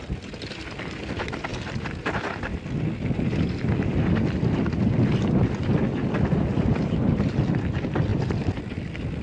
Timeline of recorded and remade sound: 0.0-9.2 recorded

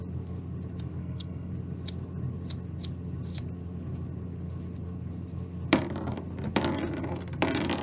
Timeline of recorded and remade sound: 0.0-1.0 recorded; 1.0-1.5 remade; 1.5-7.8 recorded